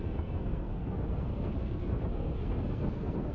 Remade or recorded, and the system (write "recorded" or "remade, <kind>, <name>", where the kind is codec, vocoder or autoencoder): remade, codec, SNAC